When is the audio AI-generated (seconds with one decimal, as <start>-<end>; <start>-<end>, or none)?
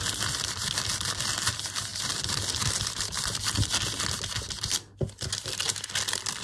none